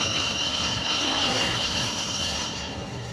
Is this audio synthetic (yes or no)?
yes